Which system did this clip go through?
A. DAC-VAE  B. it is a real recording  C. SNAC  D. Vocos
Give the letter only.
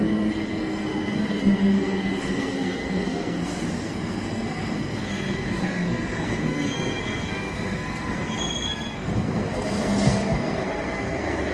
C